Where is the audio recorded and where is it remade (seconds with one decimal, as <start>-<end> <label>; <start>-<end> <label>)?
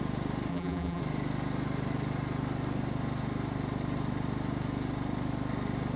0.0-0.5 recorded; 0.5-1.0 remade; 1.0-6.0 recorded